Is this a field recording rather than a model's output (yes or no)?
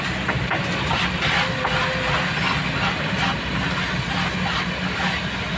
yes